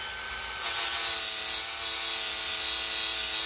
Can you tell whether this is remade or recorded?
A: recorded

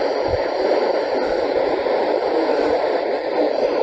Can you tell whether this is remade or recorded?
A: recorded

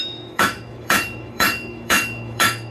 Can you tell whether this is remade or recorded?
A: remade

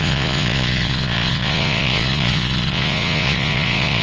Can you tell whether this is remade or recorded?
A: remade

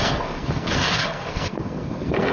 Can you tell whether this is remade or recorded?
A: remade